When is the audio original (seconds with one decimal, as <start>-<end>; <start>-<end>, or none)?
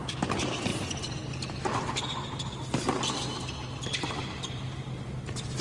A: 0.0-5.6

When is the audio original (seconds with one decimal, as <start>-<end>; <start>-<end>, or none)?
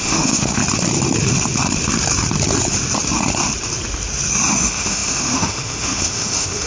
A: 0.6-4.6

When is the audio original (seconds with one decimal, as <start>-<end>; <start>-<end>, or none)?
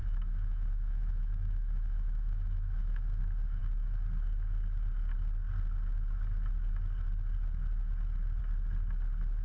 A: 3.2-9.4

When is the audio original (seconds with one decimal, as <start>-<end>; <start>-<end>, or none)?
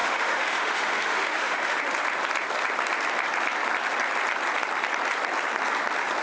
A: 1.8-6.2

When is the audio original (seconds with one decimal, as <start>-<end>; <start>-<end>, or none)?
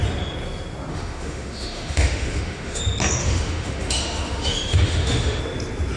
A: 0.0-0.9; 2.8-3.2; 5.4-6.0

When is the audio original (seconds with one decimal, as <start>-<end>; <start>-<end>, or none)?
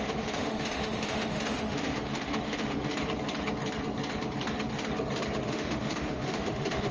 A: 2.9-5.4